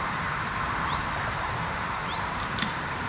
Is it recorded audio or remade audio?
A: remade